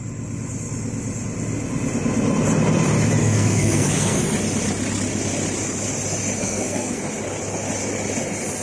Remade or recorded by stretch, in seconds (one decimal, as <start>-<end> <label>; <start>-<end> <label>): 0.0-3.2 recorded; 3.2-4.2 remade; 4.2-6.4 recorded; 6.4-7.0 remade; 7.0-8.6 recorded